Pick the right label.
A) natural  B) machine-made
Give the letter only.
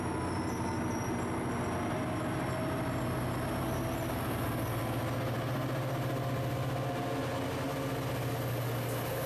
A